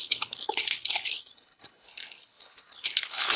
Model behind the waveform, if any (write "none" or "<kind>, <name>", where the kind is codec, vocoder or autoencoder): codec, HILCodec